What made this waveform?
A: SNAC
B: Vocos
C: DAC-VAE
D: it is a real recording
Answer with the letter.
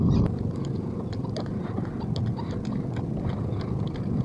D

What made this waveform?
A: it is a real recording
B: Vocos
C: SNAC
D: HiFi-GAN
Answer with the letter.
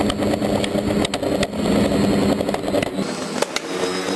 A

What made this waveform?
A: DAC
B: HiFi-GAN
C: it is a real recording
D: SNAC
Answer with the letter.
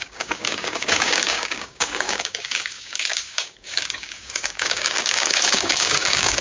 A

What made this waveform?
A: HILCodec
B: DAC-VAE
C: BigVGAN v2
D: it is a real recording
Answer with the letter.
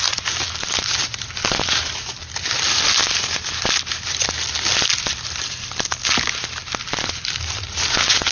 D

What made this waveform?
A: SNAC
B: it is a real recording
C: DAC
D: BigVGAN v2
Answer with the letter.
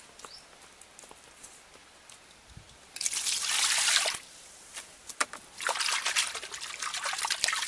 B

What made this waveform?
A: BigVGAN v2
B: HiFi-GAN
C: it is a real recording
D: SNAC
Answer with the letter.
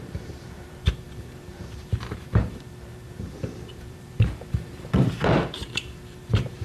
A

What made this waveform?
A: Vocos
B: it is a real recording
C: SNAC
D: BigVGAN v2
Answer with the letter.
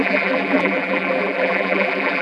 D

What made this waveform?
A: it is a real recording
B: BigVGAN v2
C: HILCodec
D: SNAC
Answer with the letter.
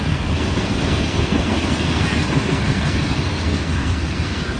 D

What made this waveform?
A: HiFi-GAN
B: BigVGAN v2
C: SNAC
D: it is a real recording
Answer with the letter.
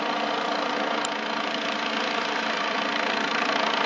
D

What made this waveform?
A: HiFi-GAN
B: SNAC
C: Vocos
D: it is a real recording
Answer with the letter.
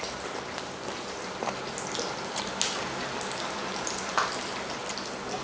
D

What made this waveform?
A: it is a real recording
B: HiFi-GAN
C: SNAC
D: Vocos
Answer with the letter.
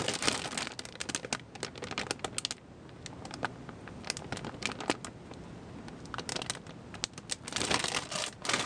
A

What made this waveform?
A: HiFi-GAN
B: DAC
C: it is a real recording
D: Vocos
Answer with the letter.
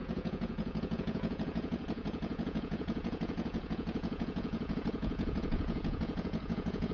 D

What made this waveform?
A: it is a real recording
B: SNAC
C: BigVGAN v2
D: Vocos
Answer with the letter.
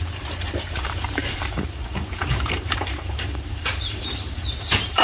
C